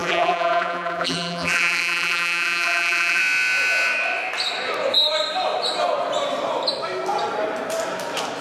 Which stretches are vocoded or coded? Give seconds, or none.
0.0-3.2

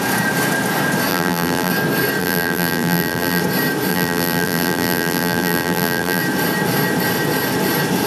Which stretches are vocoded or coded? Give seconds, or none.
1.1-1.7; 2.2-3.4; 3.9-6.2

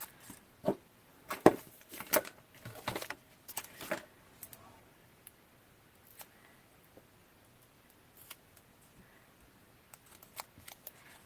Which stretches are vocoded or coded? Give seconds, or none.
1.1-2.1

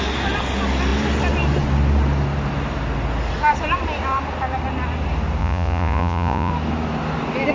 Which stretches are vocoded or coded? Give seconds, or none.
5.4-6.5

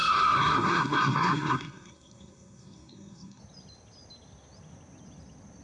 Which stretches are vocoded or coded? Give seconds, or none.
0.0-3.4